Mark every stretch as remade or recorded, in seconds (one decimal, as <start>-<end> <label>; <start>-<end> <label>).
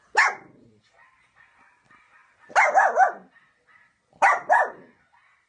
0.0-5.5 recorded